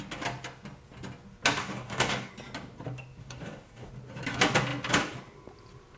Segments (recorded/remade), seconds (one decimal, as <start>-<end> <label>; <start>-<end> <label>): 0.0-1.6 recorded; 1.6-2.3 remade; 2.3-3.2 recorded; 3.2-3.9 remade; 3.9-6.0 recorded